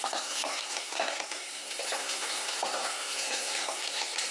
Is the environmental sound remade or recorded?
remade